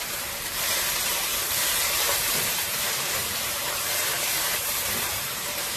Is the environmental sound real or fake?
fake